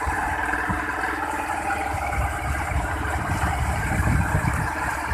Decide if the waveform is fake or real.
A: fake